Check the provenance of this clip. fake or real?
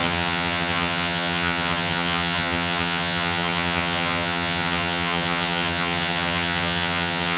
fake